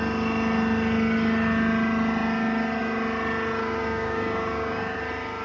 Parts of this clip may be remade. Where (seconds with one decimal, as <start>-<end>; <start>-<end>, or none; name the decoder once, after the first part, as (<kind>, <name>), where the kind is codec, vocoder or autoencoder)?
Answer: 3.6-5.0 (codec, DAC)